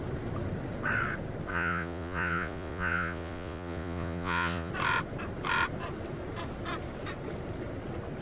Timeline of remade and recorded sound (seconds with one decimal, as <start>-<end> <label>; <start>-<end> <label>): 0.0-1.5 recorded; 1.5-4.7 remade; 4.7-8.2 recorded